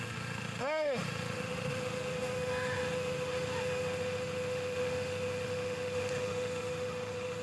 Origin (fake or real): fake